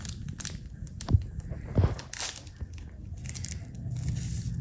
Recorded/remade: recorded